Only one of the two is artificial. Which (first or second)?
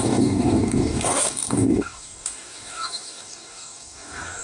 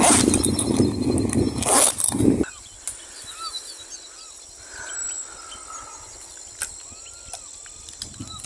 first